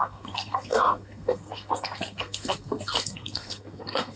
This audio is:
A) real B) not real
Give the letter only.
B